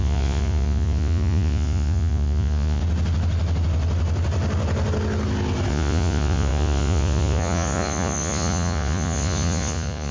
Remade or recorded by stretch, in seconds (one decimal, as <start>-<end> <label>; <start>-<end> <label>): 0.0-2.8 remade; 2.8-5.7 recorded; 5.7-10.1 remade